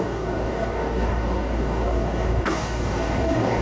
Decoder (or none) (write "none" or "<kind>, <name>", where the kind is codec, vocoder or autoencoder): codec, DAC